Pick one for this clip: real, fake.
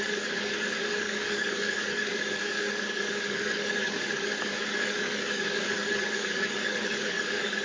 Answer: fake